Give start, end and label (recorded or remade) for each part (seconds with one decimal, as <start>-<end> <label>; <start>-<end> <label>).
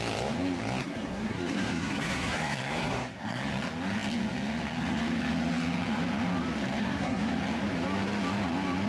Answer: 0.0-0.8 recorded; 0.8-3.4 remade; 3.4-6.8 recorded; 6.8-7.3 remade; 7.3-8.9 recorded